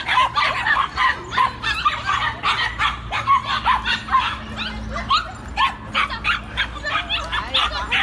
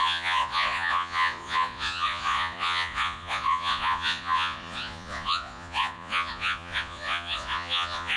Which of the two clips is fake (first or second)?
second